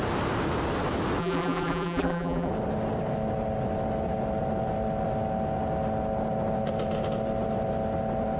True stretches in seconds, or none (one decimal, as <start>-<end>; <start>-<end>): 0.0-1.2; 2.5-8.4